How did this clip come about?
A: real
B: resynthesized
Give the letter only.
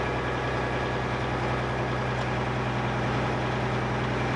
A